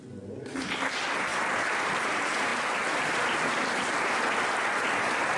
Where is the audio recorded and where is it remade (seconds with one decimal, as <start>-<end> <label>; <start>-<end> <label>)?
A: 0.0-2.5 recorded; 2.5-4.2 remade; 4.2-5.4 recorded